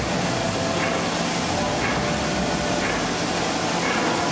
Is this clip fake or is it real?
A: real